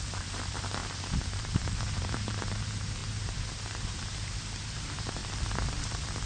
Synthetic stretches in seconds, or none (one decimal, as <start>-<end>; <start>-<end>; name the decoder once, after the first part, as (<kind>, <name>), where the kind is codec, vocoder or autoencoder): 0.0-3.0 (vocoder, BigVGAN v2); 3.9-5.2; 5.7-6.3